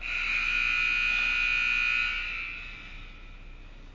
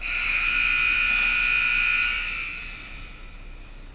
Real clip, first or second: first